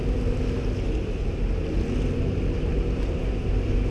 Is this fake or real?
real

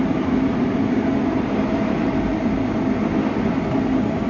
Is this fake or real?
real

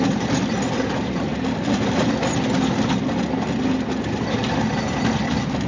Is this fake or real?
real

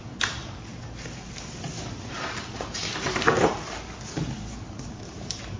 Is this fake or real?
real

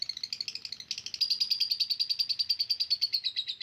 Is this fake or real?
real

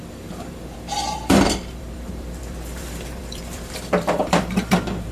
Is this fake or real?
fake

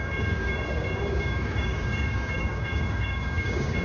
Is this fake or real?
fake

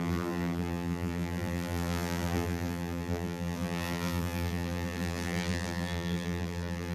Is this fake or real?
fake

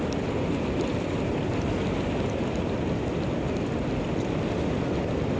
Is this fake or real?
real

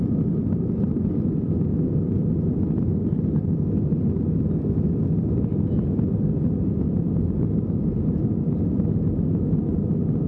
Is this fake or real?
real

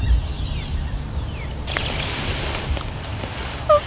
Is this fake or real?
fake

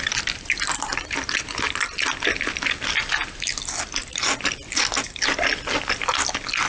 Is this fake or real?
real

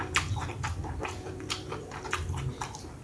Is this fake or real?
real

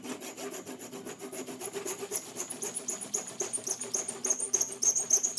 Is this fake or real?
real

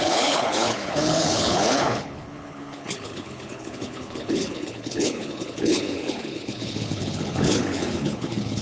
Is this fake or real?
fake